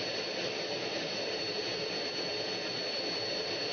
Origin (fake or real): real